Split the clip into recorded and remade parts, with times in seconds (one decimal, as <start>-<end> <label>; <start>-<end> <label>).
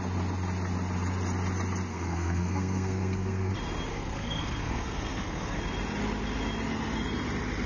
0.0-1.9 recorded; 1.9-3.5 remade; 3.5-3.9 recorded; 3.9-5.6 remade; 5.6-7.7 recorded